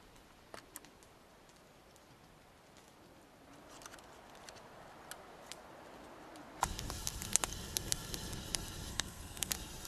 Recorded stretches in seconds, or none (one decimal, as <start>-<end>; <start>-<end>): 0.0-8.9; 9.5-9.9